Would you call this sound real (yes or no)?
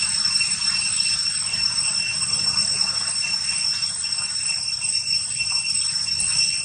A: yes